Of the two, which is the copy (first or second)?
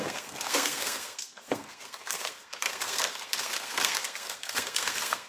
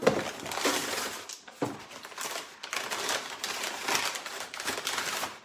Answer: first